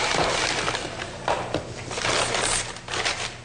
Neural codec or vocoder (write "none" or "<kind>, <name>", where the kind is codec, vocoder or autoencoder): none